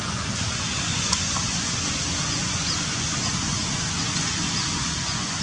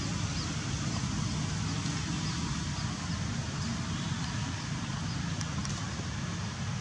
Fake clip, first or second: first